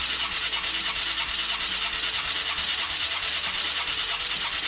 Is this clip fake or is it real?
real